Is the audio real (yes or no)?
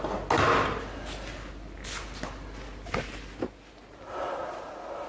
yes